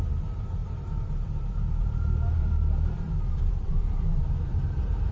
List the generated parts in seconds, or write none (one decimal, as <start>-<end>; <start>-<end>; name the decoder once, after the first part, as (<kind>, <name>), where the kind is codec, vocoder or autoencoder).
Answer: 0.0-5.1 (vocoder, BigVGAN v2)